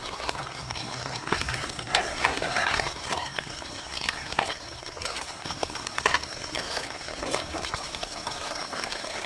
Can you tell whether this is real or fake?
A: fake